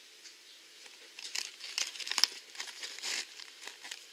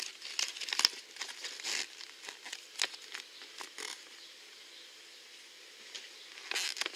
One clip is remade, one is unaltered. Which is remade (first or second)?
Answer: first